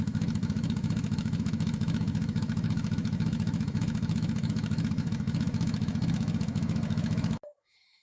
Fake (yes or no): yes